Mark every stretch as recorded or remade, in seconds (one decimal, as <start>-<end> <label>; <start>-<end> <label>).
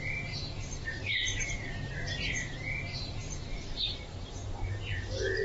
0.0-5.4 remade